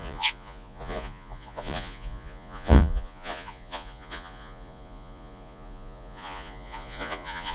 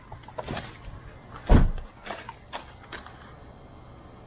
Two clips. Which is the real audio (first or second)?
second